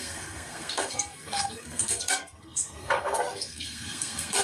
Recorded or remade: remade